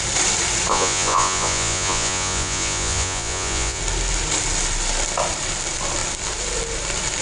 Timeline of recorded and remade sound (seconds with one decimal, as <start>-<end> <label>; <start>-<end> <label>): 0.0-0.7 recorded; 0.7-3.8 remade; 3.8-7.2 recorded

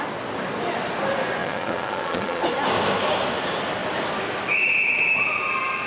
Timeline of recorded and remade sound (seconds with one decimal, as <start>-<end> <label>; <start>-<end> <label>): 0.0-1.4 recorded; 1.4-2.4 remade; 2.4-5.9 recorded

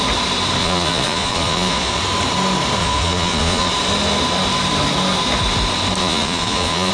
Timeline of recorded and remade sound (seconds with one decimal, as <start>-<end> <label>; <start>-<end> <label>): 0.0-0.6 recorded; 0.6-2.0 remade; 2.0-2.8 recorded; 2.8-3.7 remade; 3.7-6.0 recorded; 6.0-6.9 remade

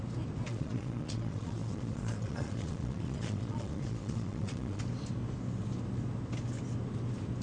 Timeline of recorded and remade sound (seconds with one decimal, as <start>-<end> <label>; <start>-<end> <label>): 0.0-0.5 recorded; 0.5-4.8 remade; 4.8-7.4 recorded

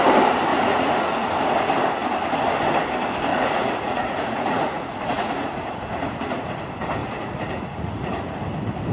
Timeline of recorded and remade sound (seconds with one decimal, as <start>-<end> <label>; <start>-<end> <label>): 0.0-0.5 recorded; 0.5-1.3 remade; 1.3-3.3 recorded; 3.3-6.6 remade; 6.6-7.0 recorded; 7.0-8.4 remade; 8.4-8.9 recorded

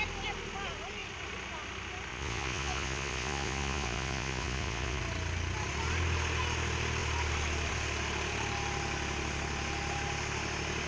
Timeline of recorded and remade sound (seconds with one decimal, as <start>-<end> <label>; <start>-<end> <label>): 0.0-2.1 recorded; 2.1-5.0 remade; 5.0-10.9 recorded

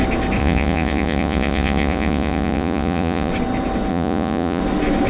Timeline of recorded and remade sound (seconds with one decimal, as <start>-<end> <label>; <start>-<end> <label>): 0.0-0.4 recorded; 0.4-3.3 remade; 3.3-3.9 recorded; 3.9-4.6 remade; 4.6-5.1 recorded

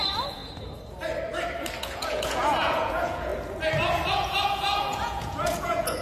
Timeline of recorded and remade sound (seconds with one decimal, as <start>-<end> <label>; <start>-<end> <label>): 0.0-0.4 remade; 0.4-1.8 recorded; 1.8-3.3 remade; 3.3-4.1 recorded; 4.1-6.0 remade